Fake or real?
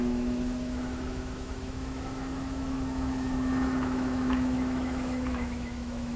fake